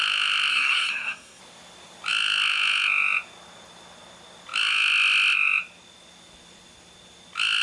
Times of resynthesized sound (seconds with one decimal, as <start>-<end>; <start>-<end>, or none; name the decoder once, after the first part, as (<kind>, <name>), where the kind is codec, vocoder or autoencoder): 0.5-1.4 (codec, SNAC)